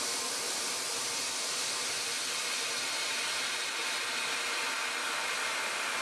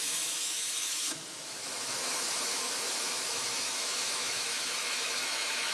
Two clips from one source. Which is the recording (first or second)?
first